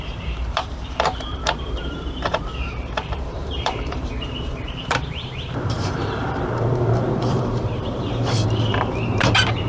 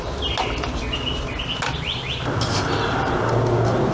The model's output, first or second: first